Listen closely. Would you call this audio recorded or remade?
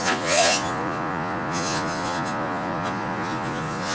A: remade